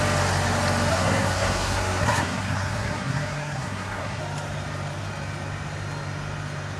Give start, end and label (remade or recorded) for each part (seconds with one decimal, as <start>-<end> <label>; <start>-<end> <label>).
0.0-0.9 recorded; 0.9-4.2 remade; 4.2-6.8 recorded